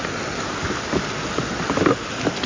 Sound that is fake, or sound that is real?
real